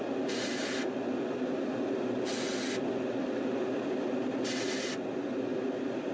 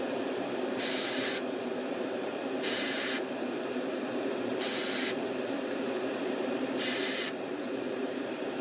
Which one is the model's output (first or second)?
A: second